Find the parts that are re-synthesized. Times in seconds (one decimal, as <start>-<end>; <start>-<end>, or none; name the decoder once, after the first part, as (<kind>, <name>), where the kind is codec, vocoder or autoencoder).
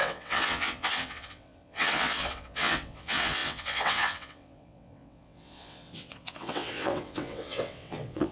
0.0-8.3 (vocoder, WaveNeXt)